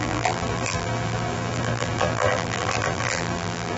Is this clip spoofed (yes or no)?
yes